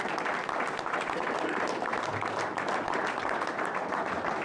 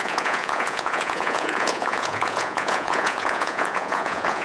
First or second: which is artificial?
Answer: second